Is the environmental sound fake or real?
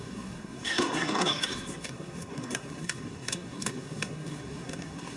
fake